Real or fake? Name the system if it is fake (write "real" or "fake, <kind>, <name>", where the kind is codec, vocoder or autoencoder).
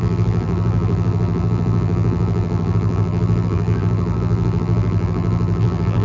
fake, vocoder, BigVGAN v2